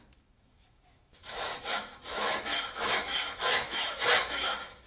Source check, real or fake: fake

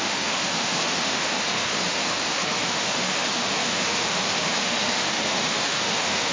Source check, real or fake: fake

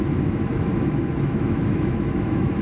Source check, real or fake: fake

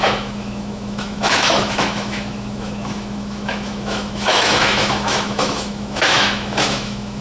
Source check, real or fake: fake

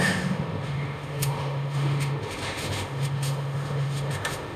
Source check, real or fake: fake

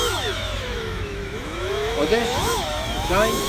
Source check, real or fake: fake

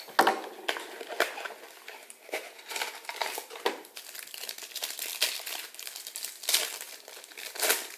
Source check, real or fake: real